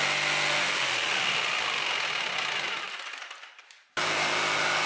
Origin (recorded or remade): recorded